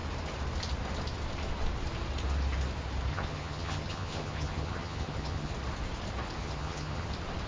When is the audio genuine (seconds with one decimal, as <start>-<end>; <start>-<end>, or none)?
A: 0.0-3.1; 5.5-6.4; 7.1-7.5